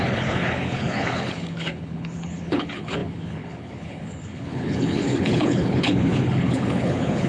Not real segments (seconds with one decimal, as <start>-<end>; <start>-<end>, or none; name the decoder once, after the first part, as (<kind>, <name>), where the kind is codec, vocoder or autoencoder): 0.0-7.3 (codec, HILCodec)

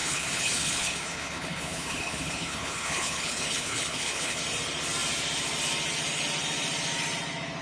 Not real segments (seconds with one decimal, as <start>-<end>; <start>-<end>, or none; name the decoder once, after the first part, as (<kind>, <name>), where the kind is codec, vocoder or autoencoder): 0.0-4.4 (codec, HILCodec)

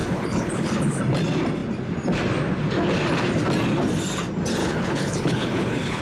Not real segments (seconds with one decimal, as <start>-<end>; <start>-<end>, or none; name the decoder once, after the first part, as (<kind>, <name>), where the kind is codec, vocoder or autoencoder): 0.0-1.0 (codec, HILCodec); 4.6-6.0

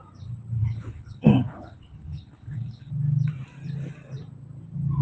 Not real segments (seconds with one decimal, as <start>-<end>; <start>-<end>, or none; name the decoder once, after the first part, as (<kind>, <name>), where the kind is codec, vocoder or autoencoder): 0.6-2.9 (codec, HILCodec)

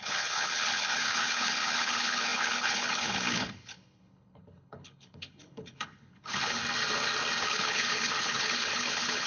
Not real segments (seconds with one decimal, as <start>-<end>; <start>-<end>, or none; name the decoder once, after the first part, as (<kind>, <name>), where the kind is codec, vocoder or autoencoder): 0.0-6.6 (codec, HILCodec); 7.4-9.3

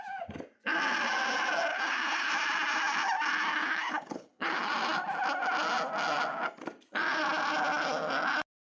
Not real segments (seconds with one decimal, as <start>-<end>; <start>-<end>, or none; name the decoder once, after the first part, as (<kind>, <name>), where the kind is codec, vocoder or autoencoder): 1.7-2.3 (codec, HILCodec); 3.5-4.7

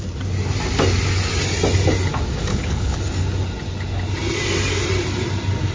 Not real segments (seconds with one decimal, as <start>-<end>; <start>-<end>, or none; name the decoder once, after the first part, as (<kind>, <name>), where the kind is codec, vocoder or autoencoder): 2.5-3.0 (codec, HILCodec)